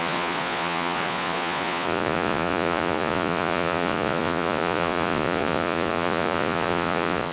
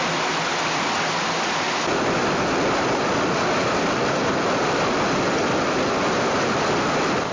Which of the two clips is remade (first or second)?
first